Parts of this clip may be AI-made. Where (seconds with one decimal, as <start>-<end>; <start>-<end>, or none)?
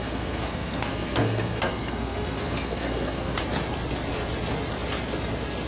0.0-3.4